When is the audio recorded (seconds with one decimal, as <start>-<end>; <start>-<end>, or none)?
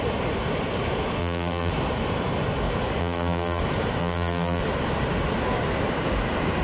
0.0-1.2; 1.7-3.0; 3.6-4.0; 4.6-6.6